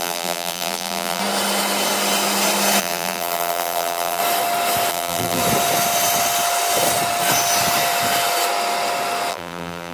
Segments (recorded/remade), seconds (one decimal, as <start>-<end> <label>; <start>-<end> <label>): 0.0-1.2 remade; 1.2-2.8 recorded; 2.8-4.2 remade; 4.2-4.9 recorded; 4.9-5.4 remade; 5.4-9.3 recorded; 9.3-9.9 remade